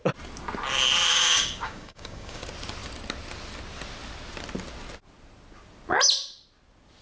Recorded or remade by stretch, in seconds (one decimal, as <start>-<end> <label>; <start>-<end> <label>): 0.0-1.1 recorded; 1.1-2.4 remade; 2.4-7.0 recorded